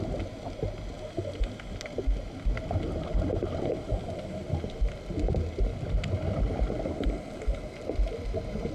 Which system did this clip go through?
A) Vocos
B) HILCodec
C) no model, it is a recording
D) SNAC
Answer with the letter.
C